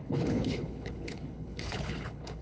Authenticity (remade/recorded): remade